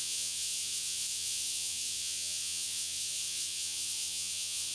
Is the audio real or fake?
fake